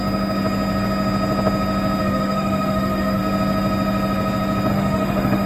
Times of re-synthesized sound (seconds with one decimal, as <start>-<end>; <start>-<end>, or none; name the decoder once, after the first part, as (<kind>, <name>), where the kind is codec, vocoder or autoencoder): 2.0-3.2 (autoencoder, DAC-VAE); 4.7-5.5